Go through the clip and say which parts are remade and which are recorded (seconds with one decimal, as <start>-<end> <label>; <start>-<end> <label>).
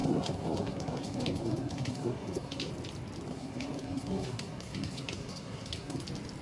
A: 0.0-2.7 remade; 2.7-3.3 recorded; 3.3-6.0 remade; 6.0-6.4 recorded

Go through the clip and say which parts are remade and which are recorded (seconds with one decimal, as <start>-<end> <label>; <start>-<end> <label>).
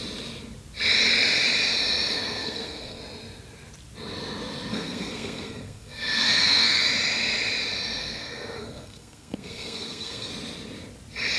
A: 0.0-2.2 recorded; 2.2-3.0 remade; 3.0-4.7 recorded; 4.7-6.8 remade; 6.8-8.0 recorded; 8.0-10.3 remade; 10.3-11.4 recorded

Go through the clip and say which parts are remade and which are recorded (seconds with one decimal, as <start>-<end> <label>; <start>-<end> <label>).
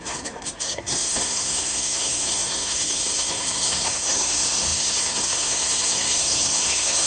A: 0.0-7.1 remade